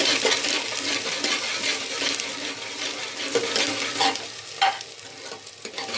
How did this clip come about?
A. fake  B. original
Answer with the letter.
B